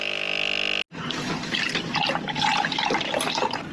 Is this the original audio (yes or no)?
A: yes